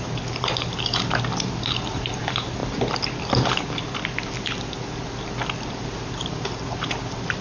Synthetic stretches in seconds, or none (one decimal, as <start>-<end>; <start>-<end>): 0.0-2.6; 5.7-7.4